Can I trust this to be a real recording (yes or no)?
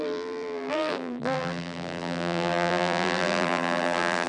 no